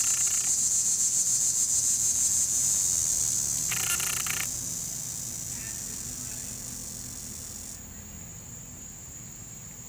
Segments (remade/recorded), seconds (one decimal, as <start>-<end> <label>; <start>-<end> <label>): 0.0-8.3 recorded; 8.3-9.9 remade